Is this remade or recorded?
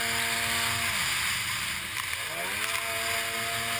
recorded